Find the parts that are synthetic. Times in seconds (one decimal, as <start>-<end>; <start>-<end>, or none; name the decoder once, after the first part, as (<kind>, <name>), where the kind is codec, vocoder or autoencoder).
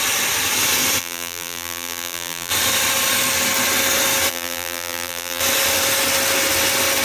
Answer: 1.0-2.5 (vocoder, BigVGAN v2); 4.3-5.4